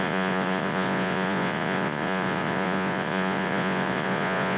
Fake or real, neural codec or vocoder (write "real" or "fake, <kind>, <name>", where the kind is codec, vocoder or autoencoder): fake, vocoder, Vocos